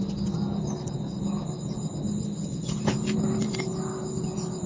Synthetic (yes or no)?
no